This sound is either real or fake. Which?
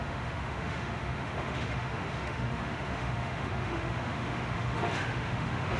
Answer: fake